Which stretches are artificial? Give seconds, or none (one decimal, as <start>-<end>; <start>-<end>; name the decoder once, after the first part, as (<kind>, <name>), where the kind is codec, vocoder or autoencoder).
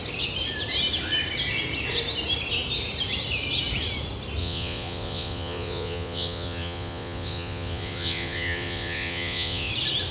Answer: 4.4-9.7 (vocoder, Vocos)